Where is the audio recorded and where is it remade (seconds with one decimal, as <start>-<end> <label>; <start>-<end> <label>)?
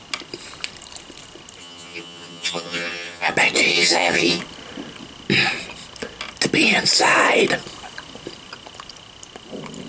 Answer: 0.0-1.6 recorded; 1.6-3.3 remade; 3.3-3.7 recorded; 3.7-4.4 remade; 4.4-9.9 recorded